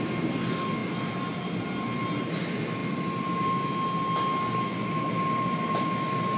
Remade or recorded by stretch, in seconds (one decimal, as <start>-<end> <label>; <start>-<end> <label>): 0.0-6.4 recorded